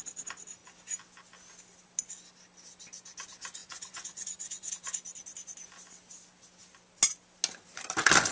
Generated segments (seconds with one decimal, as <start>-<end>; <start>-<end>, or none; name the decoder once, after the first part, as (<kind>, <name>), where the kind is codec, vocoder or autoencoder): 3.6-4.7 (vocoder, Vocos)